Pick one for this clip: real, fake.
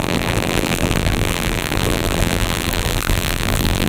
fake